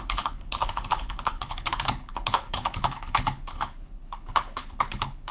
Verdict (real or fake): fake